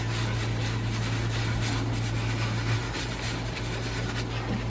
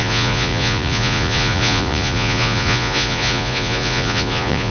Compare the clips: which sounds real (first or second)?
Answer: first